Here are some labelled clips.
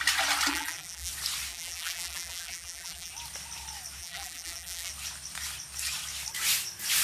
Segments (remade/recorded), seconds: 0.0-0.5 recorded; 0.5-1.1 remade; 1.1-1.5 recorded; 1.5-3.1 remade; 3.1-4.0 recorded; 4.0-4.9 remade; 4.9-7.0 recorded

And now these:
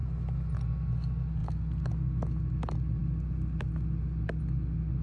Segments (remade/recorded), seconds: 0.0-5.0 recorded

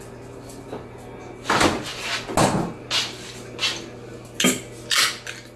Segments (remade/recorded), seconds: 0.0-5.6 recorded

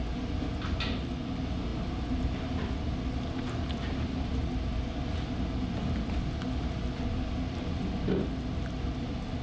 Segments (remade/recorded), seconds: 0.0-9.4 recorded